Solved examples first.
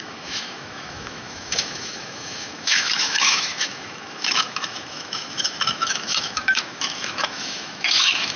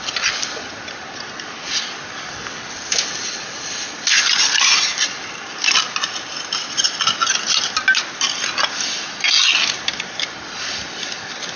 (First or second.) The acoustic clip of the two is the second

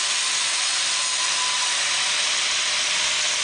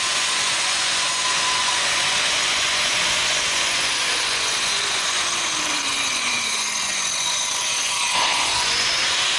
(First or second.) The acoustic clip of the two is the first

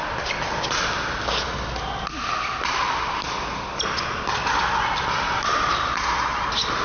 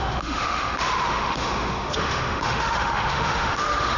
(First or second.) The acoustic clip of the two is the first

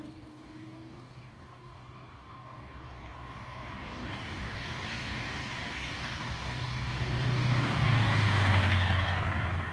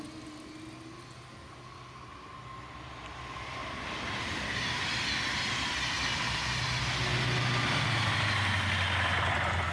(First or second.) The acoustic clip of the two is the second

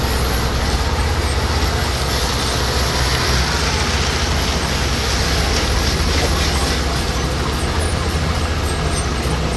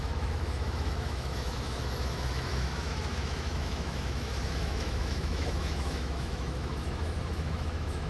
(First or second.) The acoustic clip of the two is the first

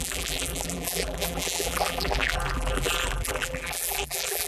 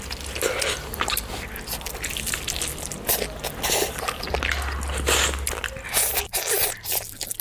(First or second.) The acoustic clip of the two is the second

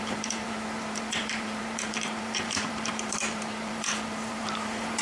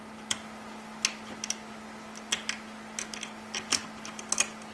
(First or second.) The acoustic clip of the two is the second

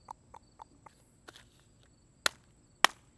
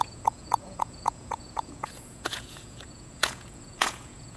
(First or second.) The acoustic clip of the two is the first